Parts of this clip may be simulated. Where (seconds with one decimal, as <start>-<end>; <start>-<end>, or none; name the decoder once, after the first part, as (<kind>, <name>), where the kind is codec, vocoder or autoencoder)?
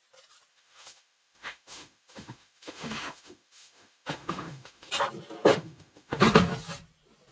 0.5-4.9 (autoencoder, DAC-VAE); 5.5-6.2